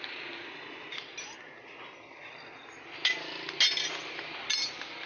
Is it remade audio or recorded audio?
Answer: recorded